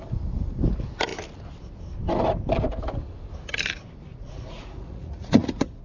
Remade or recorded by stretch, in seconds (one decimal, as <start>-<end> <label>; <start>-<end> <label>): 0.0-4.1 recorded; 4.1-5.8 remade